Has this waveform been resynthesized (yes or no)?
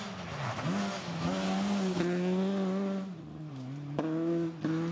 no